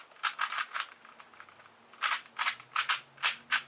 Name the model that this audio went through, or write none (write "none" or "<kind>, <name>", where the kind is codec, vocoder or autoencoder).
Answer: none